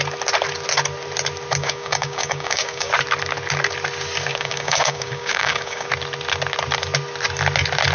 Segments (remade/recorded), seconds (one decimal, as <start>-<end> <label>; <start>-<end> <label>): 0.0-1.6 recorded; 1.6-2.9 remade; 2.9-4.3 recorded; 4.3-5.9 remade; 5.9-7.9 recorded